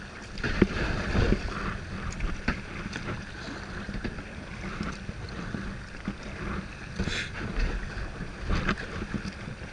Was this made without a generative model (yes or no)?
yes